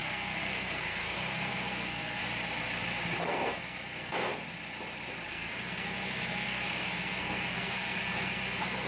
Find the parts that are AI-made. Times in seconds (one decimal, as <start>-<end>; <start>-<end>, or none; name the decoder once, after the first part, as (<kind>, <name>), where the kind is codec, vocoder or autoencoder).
0.0-2.2 (codec, SNAC); 3.2-4.3; 5.3-8.9